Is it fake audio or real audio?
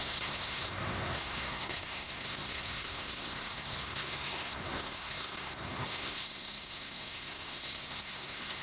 fake